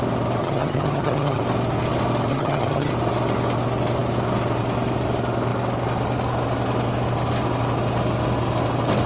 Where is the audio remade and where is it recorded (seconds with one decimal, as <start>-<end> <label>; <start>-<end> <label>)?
0.0-0.4 recorded; 0.4-1.4 remade; 1.4-2.3 recorded; 2.3-2.9 remade; 2.9-9.1 recorded